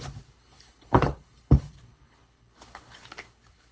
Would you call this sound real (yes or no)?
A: no